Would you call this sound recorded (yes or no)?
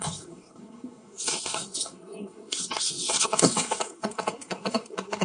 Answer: no